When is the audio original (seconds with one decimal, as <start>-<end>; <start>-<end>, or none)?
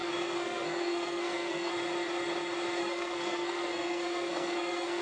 1.7-2.8